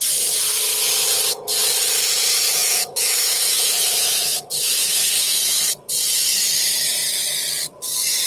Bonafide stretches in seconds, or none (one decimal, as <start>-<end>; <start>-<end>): 0.0-2.6; 5.6-8.3

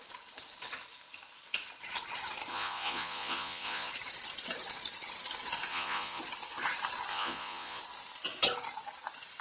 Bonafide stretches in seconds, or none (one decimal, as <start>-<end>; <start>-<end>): 0.0-2.5; 3.9-5.7; 6.2-7.1; 7.8-9.4

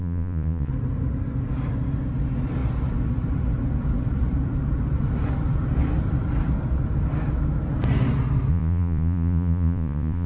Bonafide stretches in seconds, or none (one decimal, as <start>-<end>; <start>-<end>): 0.7-8.5

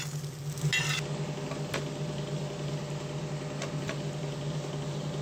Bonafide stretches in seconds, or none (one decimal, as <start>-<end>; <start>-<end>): 0.0-5.2

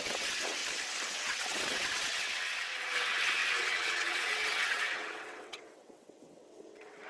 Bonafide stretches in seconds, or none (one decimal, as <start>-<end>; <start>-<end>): 0.6-1.1

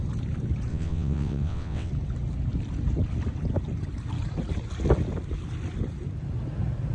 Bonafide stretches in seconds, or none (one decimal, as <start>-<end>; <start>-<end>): 0.0-0.7; 1.9-6.9

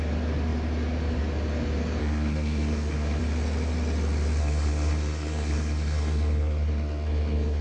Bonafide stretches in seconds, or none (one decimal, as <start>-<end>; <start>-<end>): 0.0-2.0; 3.2-4.4

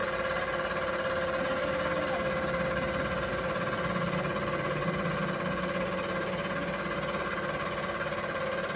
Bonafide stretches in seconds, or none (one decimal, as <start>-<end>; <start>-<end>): 0.0-8.8